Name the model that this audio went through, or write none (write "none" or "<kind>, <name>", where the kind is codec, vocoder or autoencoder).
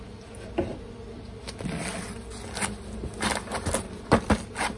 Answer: none